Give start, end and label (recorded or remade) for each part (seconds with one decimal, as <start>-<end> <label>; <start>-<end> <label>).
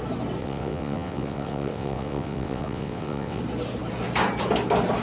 0.0-0.4 recorded; 0.4-3.4 remade; 3.4-5.0 recorded